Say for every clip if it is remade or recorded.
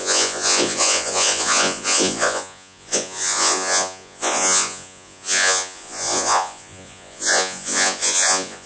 remade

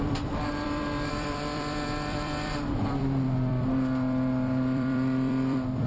remade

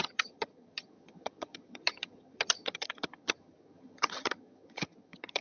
remade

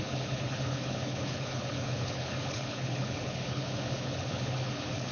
remade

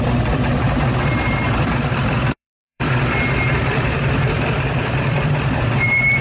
remade